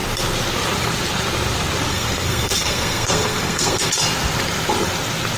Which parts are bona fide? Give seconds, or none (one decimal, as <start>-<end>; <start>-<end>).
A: 0.0-1.9; 3.9-5.4